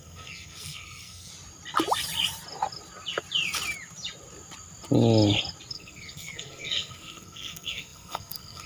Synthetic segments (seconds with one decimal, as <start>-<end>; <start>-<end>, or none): 0.0-1.3; 5.7-8.7